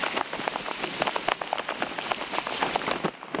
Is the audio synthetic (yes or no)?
no